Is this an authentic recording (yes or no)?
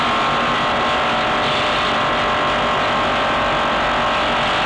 yes